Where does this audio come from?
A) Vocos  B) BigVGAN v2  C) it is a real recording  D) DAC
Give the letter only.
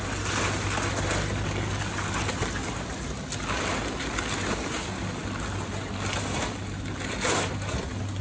C